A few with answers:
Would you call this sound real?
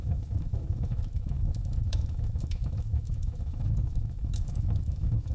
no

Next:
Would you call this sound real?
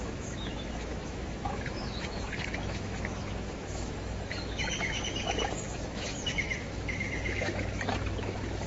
no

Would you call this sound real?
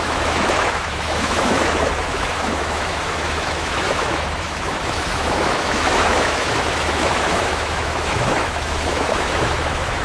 no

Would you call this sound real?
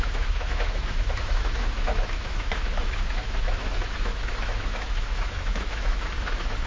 no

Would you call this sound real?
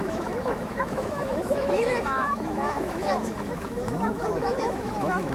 no